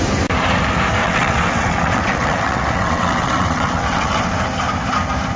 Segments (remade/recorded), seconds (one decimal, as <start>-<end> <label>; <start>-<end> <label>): 0.0-1.0 recorded; 1.0-4.2 remade; 4.2-5.4 recorded